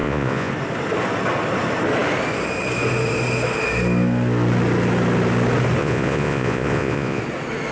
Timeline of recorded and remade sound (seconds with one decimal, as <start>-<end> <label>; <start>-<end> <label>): 0.0-0.5 remade; 0.5-5.8 recorded; 5.8-7.2 remade; 7.2-7.7 recorded